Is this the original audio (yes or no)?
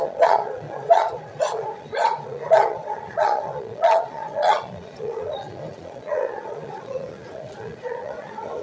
no